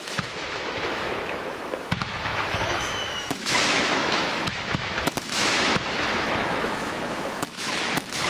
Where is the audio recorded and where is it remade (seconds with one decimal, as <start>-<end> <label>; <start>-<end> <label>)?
0.0-8.3 remade

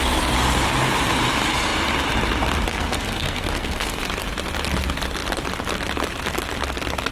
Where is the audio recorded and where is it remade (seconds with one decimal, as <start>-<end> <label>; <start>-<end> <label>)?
0.0-2.7 recorded; 2.7-4.0 remade; 4.0-7.1 recorded

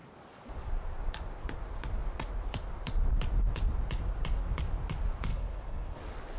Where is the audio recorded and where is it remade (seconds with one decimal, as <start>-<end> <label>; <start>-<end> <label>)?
0.0-5.3 recorded; 5.3-6.0 remade; 6.0-6.4 recorded

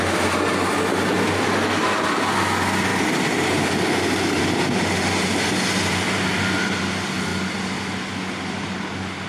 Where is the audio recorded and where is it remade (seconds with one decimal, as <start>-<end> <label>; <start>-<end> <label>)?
0.0-9.3 recorded

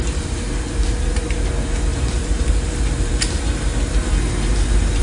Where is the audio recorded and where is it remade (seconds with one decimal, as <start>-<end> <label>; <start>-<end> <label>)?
0.0-3.7 remade; 3.7-5.0 recorded